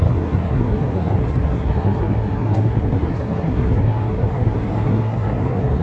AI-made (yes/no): yes